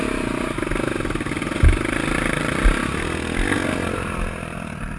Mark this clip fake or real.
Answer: real